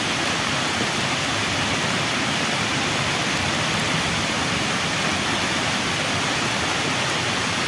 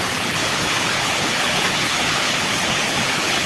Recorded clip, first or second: first